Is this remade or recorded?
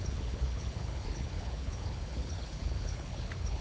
remade